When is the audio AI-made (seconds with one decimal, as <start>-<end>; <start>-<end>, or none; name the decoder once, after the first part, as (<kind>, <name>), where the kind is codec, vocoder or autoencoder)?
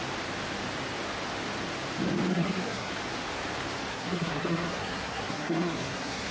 2.3-2.9 (codec, SNAC); 3.9-6.3